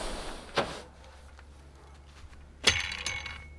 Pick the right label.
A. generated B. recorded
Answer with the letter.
B